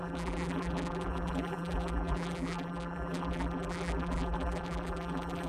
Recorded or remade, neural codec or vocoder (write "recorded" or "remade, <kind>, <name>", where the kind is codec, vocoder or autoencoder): remade, vocoder, BigVGAN v2